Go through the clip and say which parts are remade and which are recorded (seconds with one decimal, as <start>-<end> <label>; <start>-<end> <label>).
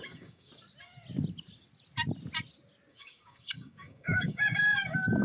0.0-0.5 remade; 0.5-2.9 recorded; 2.9-5.2 remade